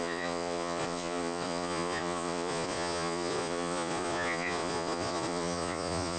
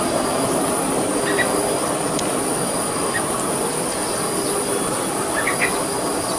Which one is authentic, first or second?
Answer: second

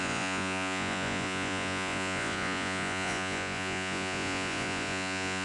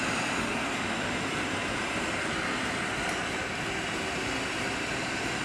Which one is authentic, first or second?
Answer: second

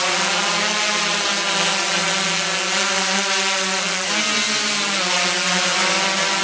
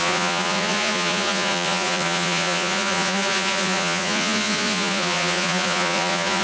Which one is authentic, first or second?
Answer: first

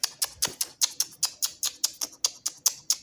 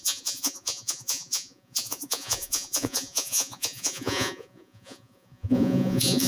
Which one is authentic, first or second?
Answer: first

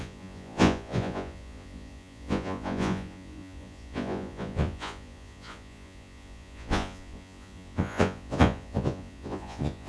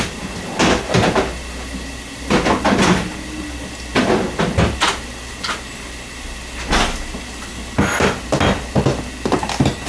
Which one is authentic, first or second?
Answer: second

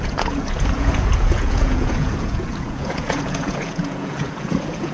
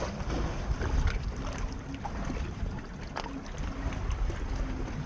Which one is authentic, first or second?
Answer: second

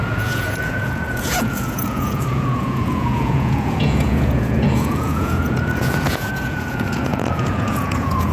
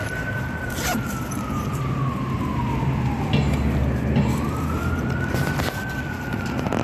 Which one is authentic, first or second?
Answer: second